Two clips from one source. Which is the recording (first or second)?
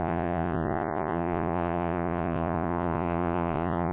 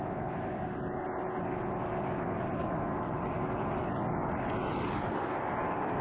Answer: second